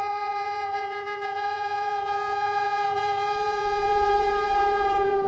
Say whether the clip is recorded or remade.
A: remade